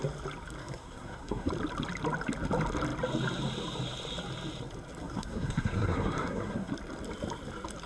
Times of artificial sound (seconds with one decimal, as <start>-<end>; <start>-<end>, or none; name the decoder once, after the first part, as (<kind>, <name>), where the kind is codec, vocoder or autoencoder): 0.6-1.5 (codec, SNAC); 5.0-6.7

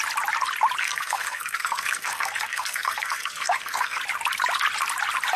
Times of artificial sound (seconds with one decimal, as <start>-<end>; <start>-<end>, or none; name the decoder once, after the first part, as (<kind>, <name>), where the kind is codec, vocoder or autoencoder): 0.8-4.0 (codec, SNAC)